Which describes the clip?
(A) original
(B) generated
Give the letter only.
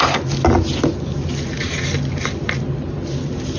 A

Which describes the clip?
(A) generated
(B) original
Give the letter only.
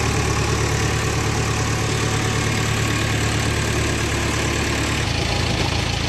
B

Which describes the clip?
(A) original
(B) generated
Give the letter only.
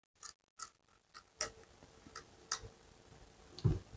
A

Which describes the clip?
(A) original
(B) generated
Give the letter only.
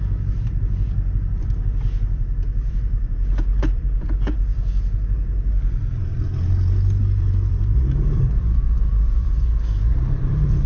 B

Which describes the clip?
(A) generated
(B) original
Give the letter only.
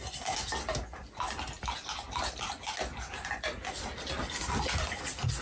B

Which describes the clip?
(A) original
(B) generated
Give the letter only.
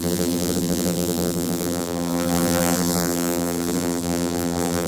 B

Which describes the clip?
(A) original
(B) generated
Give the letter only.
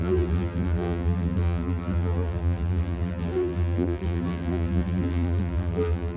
B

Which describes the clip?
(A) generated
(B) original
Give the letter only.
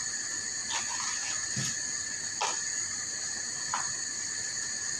B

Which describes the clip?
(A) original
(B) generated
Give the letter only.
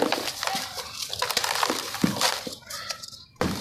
B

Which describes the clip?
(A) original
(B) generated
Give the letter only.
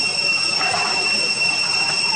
B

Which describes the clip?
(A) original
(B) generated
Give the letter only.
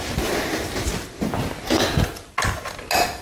A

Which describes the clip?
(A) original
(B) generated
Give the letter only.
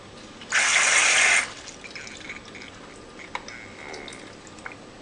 A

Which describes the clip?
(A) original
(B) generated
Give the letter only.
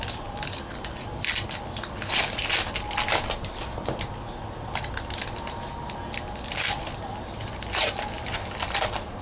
B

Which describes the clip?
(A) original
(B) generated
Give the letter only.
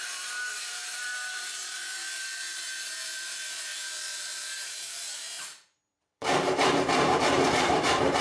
B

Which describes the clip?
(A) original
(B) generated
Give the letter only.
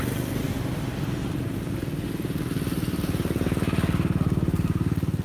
A